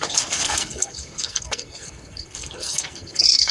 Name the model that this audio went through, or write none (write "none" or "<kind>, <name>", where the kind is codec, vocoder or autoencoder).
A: codec, SNAC